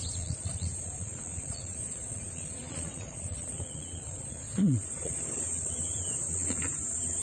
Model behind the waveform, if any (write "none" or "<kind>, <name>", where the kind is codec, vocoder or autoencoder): vocoder, Vocos